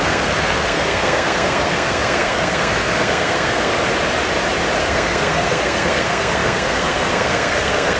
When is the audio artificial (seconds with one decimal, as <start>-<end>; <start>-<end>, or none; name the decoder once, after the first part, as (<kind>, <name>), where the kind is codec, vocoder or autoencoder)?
0.0-3.7 (codec, SNAC); 4.8-8.0